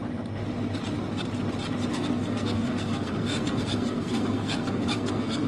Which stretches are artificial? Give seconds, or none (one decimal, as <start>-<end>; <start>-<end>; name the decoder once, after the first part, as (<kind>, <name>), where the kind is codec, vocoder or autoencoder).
1.9-5.5 (codec, SNAC)